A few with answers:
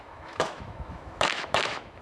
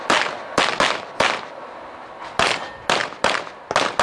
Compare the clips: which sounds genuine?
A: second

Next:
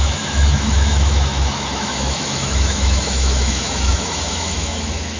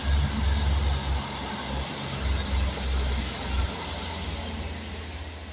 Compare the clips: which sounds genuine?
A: second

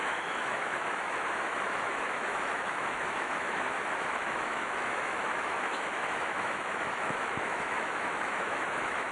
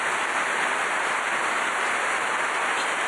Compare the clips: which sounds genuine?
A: second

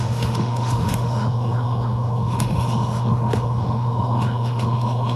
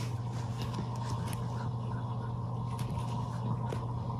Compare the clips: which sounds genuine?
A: second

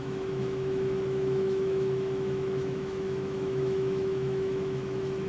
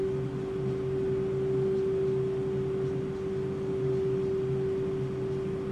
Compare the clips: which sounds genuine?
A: second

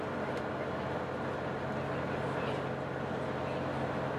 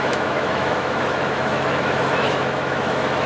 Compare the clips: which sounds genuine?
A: first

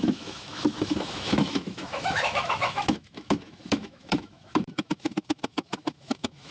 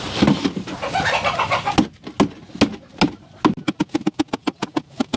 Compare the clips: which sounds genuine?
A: second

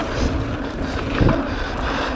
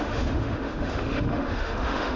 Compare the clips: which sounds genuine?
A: first